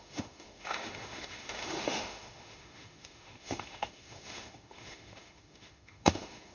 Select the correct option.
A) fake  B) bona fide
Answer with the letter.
A